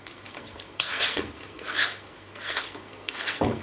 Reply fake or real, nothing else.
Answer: fake